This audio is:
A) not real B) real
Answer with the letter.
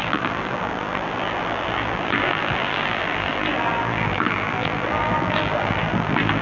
A